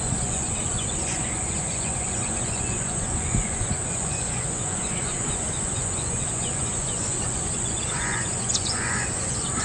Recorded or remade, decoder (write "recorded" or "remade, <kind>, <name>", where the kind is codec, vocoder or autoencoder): remade, vocoder, Vocos